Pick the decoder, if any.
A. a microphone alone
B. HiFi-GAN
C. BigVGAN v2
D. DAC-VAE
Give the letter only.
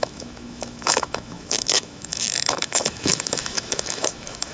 D